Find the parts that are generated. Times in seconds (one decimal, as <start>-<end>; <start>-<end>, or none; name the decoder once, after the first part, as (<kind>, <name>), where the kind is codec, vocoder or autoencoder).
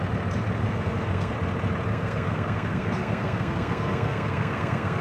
0.6-1.3 (codec, SNAC); 1.9-5.0